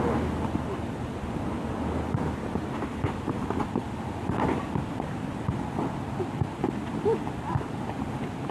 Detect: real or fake real